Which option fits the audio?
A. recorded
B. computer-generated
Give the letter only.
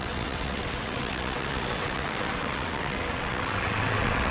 B